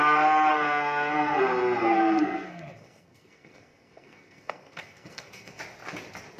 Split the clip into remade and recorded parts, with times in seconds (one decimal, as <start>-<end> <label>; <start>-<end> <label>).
0.0-0.5 recorded; 0.5-1.4 remade; 1.4-1.8 recorded; 1.8-5.6 remade; 5.6-6.4 recorded